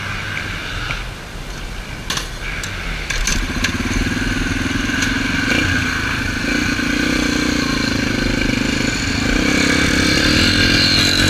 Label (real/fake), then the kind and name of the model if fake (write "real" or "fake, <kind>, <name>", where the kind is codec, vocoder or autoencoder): real